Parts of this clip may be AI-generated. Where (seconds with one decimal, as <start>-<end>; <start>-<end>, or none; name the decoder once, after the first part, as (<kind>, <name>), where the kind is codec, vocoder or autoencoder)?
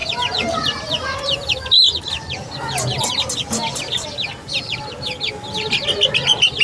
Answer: none